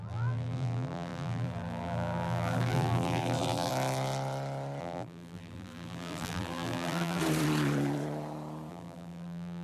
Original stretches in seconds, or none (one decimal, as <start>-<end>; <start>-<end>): 3.7-4.8; 7.2-8.7